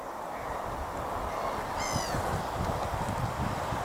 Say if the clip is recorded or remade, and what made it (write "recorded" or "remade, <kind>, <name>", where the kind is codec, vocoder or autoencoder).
recorded